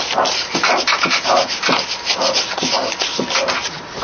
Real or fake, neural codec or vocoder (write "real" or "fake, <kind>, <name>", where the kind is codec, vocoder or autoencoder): real